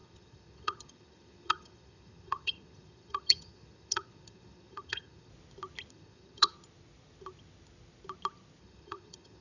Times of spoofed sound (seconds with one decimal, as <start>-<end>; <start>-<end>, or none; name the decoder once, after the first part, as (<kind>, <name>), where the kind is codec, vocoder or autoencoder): 0.0-5.3 (vocoder, HiFi-GAN); 5.9-6.5; 8.6-9.4